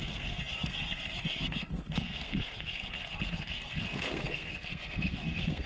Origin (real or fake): fake